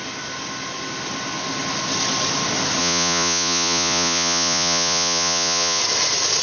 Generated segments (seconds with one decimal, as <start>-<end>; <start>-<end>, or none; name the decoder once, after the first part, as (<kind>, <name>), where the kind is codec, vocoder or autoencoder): 2.8-5.8 (vocoder, Vocos)